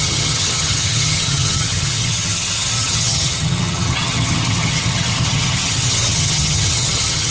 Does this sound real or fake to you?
fake